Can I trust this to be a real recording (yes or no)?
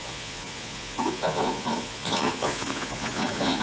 no